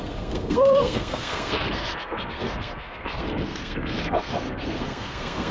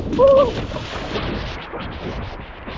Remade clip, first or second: first